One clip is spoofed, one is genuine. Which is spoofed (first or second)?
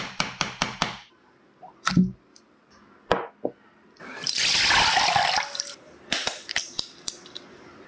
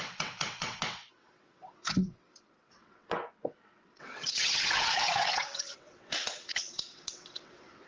second